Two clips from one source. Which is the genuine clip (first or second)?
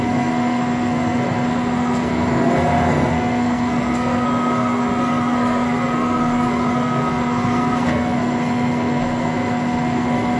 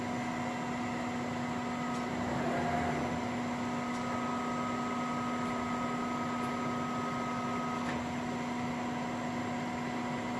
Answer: second